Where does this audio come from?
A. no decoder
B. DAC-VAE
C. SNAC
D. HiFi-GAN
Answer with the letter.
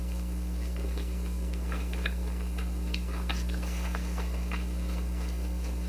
C